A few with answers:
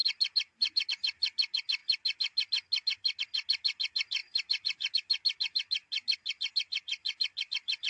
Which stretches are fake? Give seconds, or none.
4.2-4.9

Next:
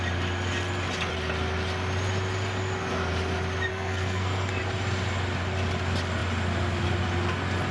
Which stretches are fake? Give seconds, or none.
3.7-4.6

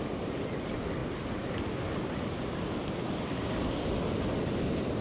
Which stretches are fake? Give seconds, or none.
1.0-4.0

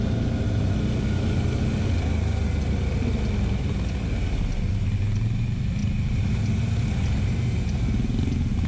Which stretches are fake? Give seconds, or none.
none

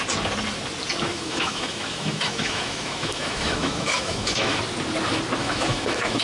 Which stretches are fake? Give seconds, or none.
1.1-4.6; 5.4-6.2

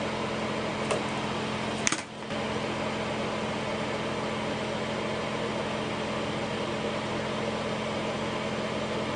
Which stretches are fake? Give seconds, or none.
3.7-8.2

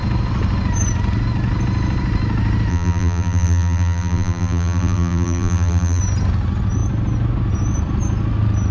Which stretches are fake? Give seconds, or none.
2.7-6.0